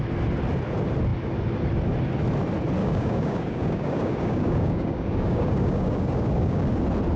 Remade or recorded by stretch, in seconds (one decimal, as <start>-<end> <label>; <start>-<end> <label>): 0.0-2.8 recorded; 2.8-6.8 remade; 6.8-7.2 recorded